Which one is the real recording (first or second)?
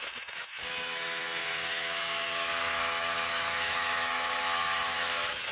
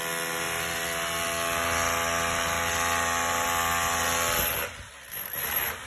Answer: second